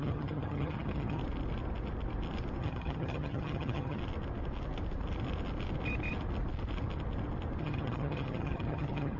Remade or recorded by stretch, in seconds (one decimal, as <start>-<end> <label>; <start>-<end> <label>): 0.0-1.2 remade; 1.2-2.6 recorded; 2.6-4.0 remade; 4.0-7.6 recorded; 7.6-9.2 remade